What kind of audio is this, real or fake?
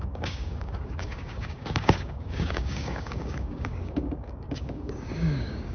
fake